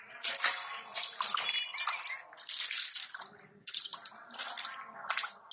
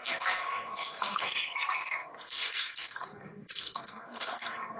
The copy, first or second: second